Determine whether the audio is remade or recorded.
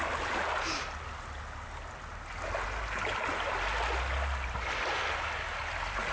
recorded